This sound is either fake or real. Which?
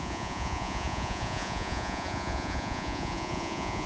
fake